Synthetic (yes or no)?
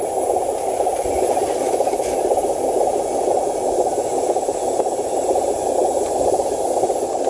no